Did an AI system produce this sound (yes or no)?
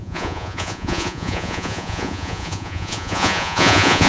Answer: yes